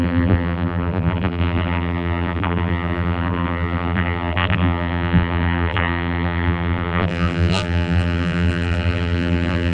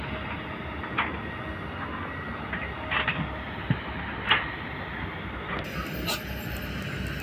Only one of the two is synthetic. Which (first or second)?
first